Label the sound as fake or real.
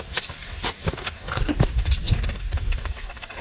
fake